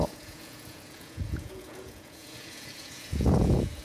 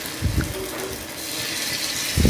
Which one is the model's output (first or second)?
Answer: first